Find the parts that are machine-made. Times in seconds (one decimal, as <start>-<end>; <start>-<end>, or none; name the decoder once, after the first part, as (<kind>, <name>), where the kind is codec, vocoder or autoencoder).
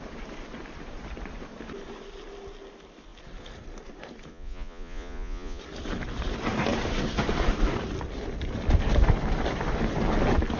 4.3-5.6 (vocoder, Vocos)